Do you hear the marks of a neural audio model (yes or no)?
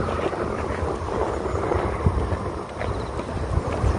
no